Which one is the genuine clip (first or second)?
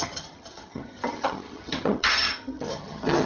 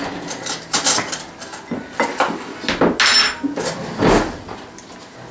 second